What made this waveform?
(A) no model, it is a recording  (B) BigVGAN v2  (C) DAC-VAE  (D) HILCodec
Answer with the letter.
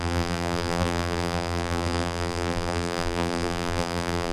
B